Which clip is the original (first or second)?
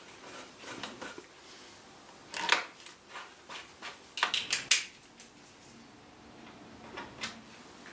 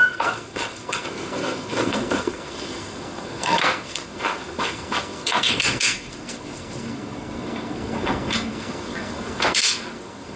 first